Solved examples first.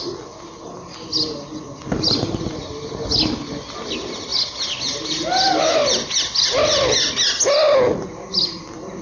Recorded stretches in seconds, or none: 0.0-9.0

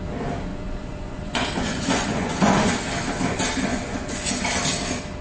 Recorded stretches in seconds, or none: 0.0-0.5; 2.7-3.7; 4.3-5.2

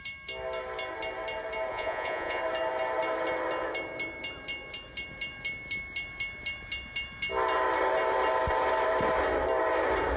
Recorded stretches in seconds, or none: 0.0-1.7; 2.4-10.2

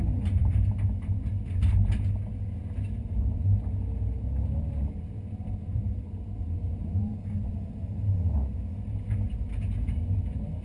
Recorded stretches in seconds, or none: 0.0-10.6

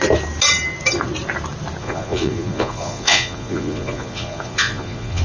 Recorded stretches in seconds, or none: 0.0-1.8

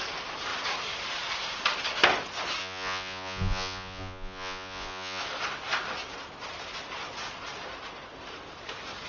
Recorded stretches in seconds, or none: 0.0-2.6; 5.2-9.1